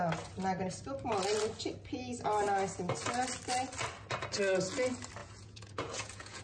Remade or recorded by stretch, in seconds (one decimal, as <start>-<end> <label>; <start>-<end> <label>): 0.0-5.2 recorded; 5.2-6.4 remade